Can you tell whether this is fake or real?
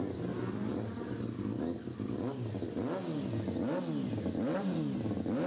real